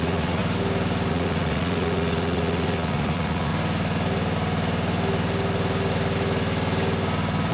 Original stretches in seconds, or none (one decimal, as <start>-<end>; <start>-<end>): 0.4-1.1; 3.5-7.5